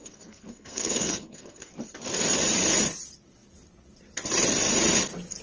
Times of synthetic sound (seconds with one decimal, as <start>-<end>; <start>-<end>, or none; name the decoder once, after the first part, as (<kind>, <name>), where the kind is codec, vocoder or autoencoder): 0.0-1.7 (codec, SNAC)